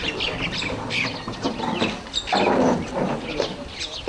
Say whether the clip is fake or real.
real